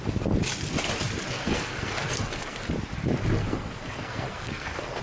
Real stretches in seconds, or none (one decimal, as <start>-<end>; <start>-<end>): 0.0-1.4; 2.7-3.4